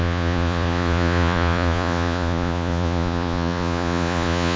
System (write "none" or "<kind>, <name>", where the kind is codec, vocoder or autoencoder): vocoder, Vocos